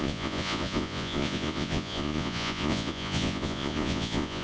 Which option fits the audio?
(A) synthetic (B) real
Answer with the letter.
A